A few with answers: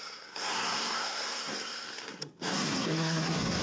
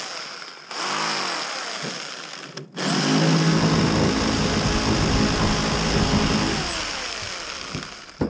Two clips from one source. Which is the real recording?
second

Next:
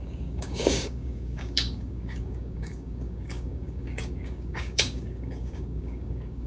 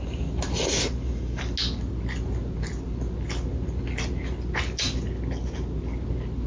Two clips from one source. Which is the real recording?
second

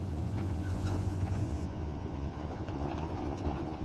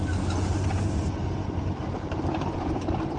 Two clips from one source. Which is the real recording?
second